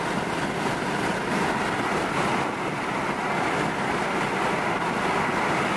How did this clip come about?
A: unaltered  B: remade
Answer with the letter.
A